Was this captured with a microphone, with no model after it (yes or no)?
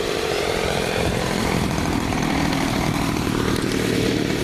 no